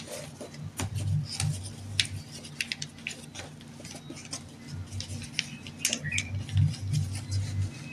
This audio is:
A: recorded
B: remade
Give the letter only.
A